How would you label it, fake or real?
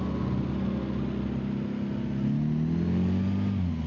real